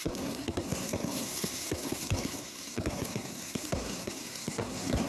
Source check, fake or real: fake